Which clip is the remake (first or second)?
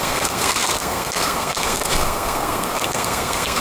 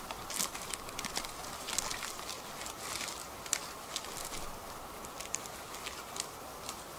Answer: first